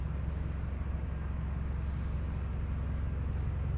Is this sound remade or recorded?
recorded